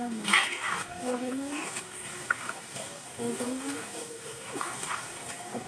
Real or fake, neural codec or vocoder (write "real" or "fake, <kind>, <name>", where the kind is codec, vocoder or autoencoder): fake, codec, DAC